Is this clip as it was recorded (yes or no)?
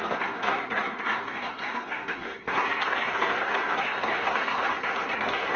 no